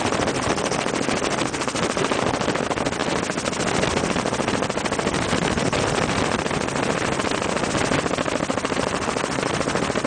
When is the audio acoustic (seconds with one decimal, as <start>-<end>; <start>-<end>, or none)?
0.0-10.1